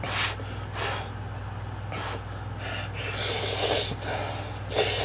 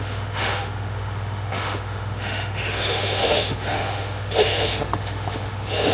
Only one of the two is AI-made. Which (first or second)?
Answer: second